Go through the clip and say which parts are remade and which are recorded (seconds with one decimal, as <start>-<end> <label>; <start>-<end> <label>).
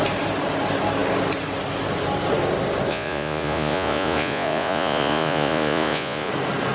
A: 0.0-2.9 recorded; 2.9-6.3 remade; 6.3-6.7 recorded